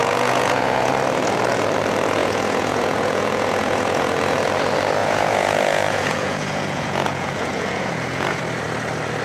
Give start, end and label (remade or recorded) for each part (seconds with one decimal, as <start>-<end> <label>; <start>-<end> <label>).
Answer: 0.0-0.9 remade; 0.9-2.2 recorded; 2.2-4.1 remade; 4.1-5.0 recorded; 5.0-8.4 remade; 8.4-9.2 recorded